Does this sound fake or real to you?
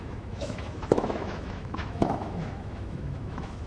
fake